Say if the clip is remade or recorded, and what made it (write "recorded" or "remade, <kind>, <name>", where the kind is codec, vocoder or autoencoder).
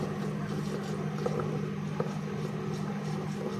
recorded